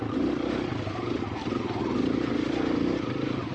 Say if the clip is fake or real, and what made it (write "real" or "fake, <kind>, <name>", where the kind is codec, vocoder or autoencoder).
real